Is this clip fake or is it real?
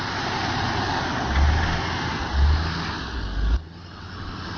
real